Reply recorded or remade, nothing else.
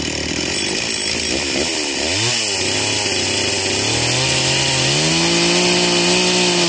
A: recorded